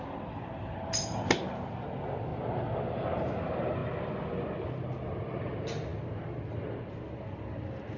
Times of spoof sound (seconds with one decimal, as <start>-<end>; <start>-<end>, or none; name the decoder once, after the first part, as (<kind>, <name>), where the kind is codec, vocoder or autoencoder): none